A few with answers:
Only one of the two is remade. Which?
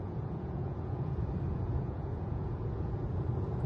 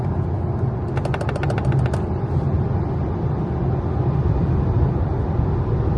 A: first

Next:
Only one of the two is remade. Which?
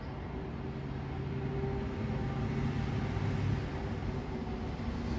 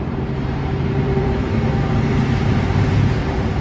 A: second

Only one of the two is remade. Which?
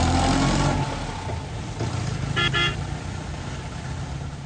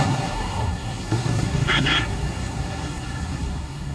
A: second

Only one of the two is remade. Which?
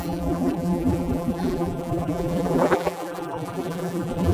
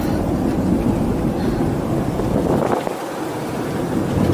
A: first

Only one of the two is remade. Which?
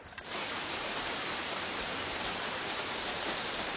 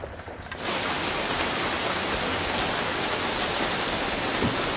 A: first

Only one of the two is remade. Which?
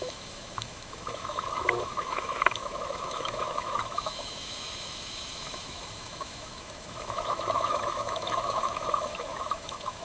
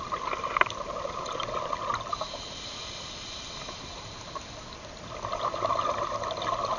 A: first